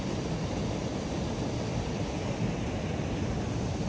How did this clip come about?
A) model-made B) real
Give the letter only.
B